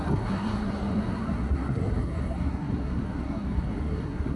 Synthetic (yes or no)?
yes